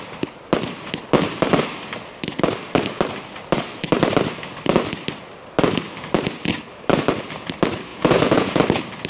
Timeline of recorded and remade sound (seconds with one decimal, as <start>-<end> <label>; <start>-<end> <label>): 0.0-7.9 recorded; 7.9-8.6 remade; 8.6-9.1 recorded